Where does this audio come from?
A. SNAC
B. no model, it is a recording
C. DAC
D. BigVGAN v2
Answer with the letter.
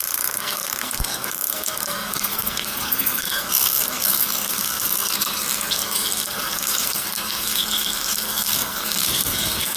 A